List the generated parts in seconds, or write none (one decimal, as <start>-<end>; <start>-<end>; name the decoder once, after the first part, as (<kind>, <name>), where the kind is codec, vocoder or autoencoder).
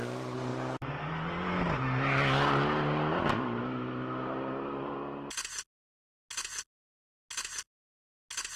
none